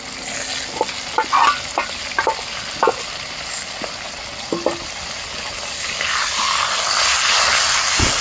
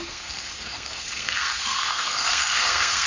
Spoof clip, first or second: second